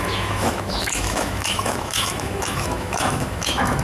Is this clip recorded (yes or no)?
no